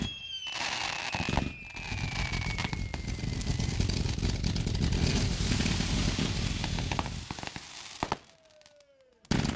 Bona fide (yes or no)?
yes